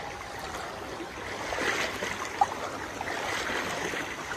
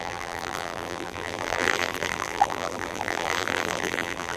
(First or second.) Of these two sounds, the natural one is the first